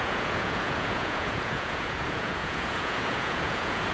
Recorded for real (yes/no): no